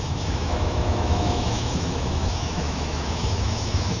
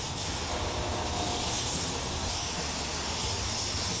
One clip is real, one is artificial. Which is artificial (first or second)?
first